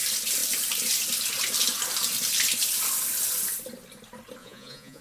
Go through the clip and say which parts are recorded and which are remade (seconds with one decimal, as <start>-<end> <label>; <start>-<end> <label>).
0.0-4.4 recorded; 4.4-5.0 remade